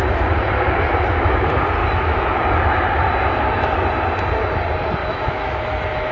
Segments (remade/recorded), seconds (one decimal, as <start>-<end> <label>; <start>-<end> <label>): 0.0-1.8 recorded; 1.8-2.4 remade; 2.4-5.0 recorded; 5.0-6.1 remade